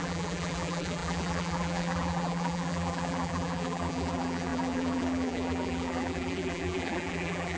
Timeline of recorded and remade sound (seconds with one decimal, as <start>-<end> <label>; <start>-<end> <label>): 0.0-7.6 remade